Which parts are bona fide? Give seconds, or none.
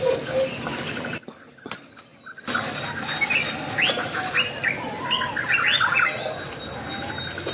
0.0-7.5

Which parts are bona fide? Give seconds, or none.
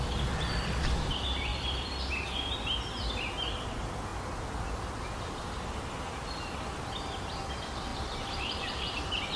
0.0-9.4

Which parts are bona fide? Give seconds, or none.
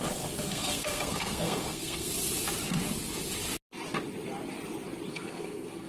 2.1-5.1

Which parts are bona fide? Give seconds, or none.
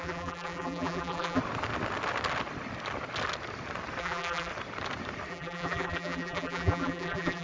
1.4-4.0; 4.5-5.3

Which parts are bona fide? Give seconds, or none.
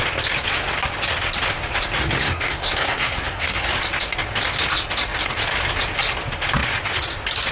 0.0-2.2; 3.7-7.5